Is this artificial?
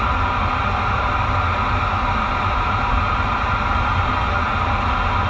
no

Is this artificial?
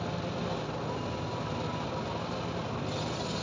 no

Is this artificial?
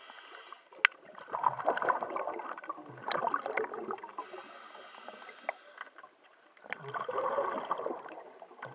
no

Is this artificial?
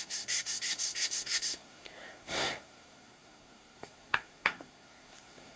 yes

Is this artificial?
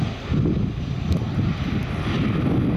no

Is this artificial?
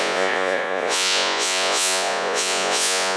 yes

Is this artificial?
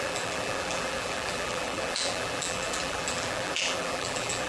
yes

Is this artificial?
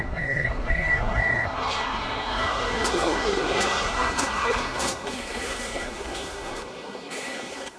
yes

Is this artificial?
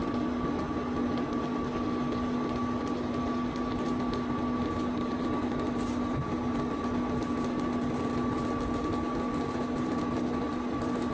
no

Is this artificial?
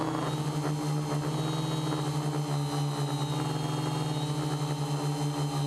no